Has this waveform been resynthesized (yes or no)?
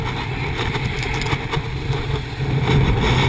no